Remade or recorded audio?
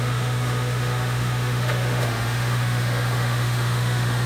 remade